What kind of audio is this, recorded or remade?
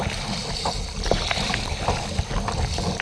recorded